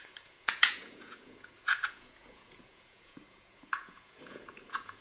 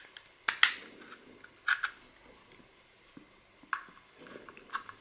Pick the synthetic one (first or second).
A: first